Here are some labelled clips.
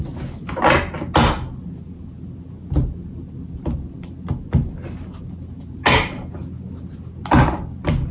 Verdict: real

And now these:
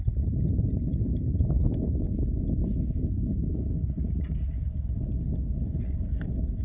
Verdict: real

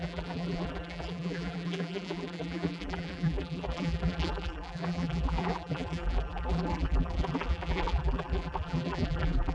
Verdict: fake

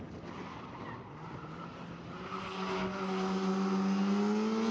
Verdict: real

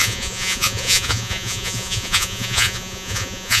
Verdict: fake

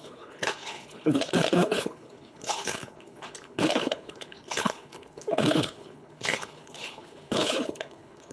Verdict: fake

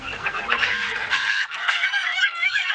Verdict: fake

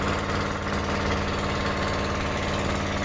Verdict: real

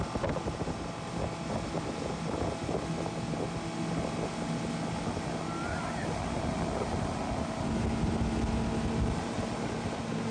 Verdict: real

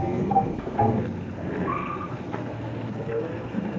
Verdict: fake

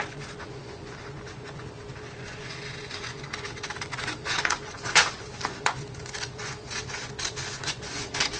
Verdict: fake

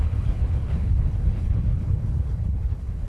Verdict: fake